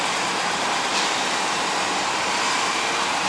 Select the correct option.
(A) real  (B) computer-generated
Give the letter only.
A